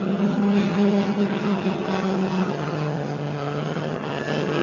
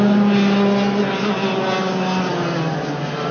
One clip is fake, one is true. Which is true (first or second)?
second